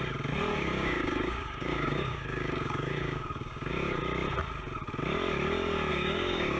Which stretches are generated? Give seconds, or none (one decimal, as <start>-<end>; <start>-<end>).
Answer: 0.5-4.0; 5.9-6.6